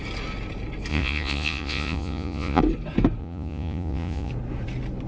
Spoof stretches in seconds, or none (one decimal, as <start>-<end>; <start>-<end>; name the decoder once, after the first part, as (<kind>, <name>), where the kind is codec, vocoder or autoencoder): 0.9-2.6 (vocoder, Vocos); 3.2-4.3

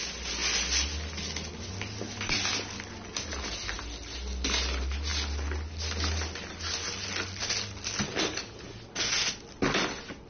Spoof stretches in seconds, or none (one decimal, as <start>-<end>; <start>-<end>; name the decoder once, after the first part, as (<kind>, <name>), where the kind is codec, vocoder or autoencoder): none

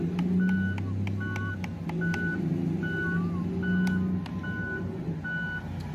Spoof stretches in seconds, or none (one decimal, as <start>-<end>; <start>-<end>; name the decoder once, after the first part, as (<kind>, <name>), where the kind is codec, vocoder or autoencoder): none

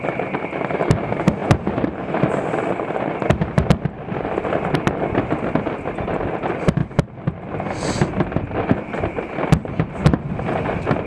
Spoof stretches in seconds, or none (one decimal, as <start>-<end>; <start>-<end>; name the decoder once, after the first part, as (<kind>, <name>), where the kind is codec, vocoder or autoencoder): none